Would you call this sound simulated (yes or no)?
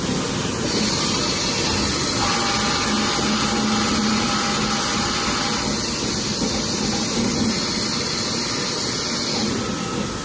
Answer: no